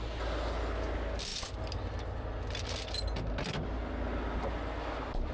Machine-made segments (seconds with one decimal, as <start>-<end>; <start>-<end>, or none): none